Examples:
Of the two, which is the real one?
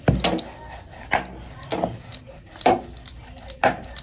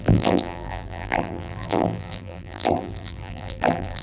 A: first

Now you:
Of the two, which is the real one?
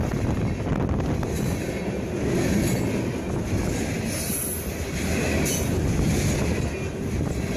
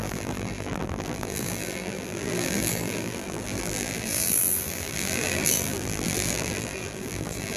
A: first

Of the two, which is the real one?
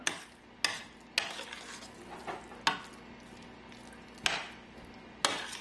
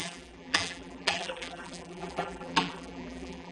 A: first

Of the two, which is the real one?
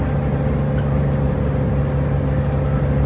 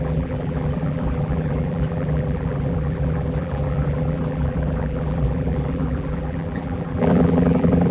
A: first